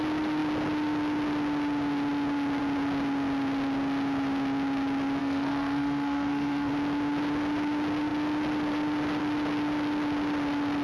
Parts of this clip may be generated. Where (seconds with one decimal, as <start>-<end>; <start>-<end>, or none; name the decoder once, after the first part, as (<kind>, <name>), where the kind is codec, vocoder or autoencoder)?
5.2-6.7 (codec, SNAC)